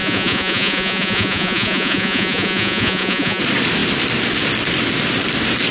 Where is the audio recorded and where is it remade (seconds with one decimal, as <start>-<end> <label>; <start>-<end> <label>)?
0.0-3.4 remade; 3.4-5.7 recorded